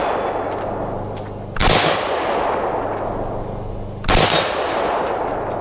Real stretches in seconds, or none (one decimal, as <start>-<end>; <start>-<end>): 0.0-5.6